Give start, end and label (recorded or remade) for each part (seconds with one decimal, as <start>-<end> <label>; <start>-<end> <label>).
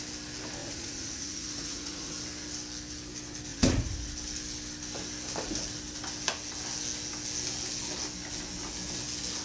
0.0-0.6 recorded; 0.6-2.1 remade; 2.1-3.5 recorded; 3.5-4.1 remade; 4.1-9.4 recorded